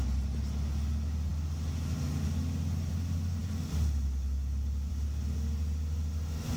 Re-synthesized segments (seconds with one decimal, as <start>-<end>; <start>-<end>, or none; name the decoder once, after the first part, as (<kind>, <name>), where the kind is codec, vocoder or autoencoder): none